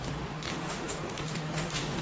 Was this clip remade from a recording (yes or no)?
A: yes